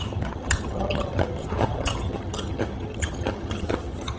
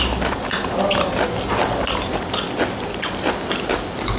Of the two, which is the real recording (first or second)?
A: second